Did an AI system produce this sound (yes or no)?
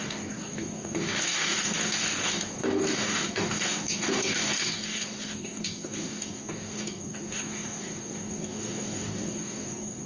yes